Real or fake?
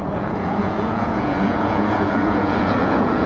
fake